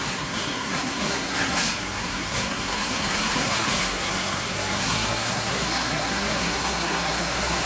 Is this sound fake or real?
fake